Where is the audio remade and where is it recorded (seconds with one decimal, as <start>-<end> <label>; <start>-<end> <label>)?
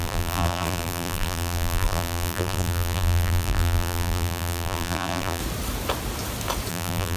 0.0-5.4 remade; 5.4-6.7 recorded; 6.7-7.2 remade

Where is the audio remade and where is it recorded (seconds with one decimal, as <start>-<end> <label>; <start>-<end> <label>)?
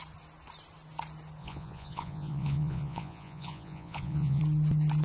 0.0-1.4 recorded; 1.4-4.4 remade; 4.4-5.0 recorded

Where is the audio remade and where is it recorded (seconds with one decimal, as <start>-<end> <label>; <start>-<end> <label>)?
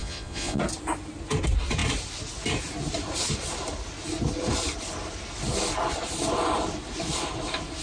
0.0-0.6 remade; 0.6-7.8 recorded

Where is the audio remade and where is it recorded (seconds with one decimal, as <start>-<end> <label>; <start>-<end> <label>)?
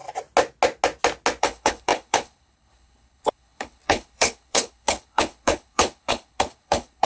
0.0-1.4 recorded; 1.4-7.0 remade